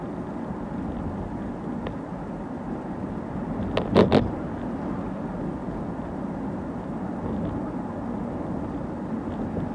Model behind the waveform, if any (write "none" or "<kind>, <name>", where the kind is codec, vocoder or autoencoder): none